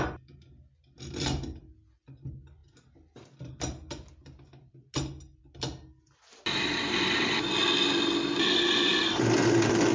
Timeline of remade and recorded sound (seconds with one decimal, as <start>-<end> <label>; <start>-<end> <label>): 0.0-9.9 recorded